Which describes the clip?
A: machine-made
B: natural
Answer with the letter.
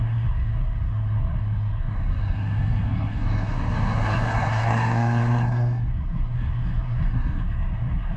A